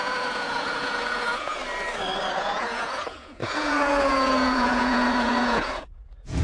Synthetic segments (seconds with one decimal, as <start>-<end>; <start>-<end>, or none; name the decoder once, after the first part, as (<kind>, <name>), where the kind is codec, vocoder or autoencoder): 0.0-1.6 (vocoder, Vocos); 2.3-6.4